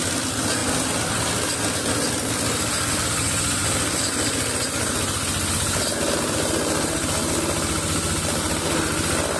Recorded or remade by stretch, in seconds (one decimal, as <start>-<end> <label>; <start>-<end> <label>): 0.0-9.4 recorded